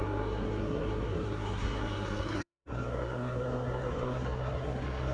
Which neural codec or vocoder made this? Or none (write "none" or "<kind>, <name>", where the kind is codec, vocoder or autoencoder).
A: codec, SNAC